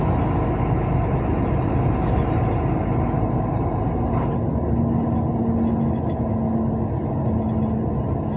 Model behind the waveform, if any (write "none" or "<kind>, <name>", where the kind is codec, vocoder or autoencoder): none